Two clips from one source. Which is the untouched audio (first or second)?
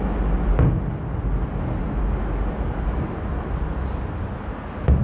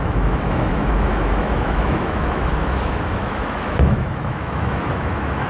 first